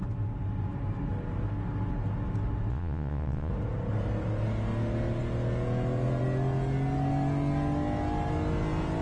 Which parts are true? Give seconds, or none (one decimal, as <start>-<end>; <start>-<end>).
0.0-2.7; 3.5-9.0